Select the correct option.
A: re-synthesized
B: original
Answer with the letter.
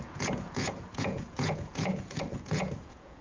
A